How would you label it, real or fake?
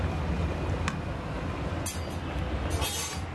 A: real